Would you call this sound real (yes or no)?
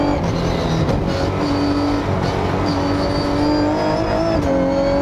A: yes